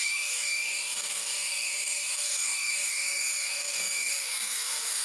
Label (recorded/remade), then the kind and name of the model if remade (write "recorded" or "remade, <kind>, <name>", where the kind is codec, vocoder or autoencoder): remade, codec, DAC